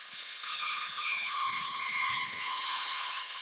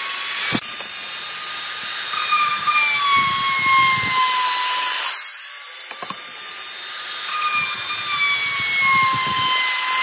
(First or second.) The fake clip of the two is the first